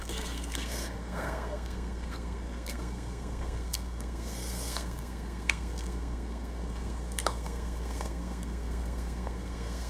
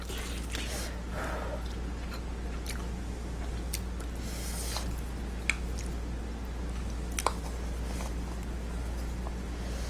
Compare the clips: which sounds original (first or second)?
second